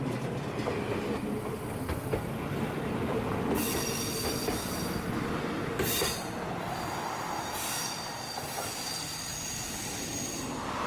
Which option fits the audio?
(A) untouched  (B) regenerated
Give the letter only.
A